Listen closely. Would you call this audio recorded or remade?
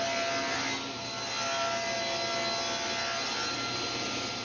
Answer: recorded